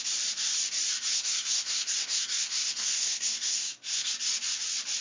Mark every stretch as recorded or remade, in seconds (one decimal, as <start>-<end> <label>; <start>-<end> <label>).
0.0-1.1 recorded; 1.1-4.1 remade; 4.1-5.0 recorded